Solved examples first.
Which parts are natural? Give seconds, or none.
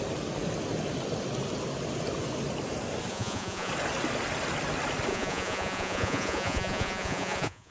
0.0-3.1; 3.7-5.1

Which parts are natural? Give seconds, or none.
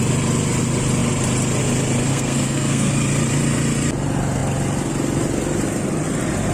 0.0-2.1; 2.9-6.5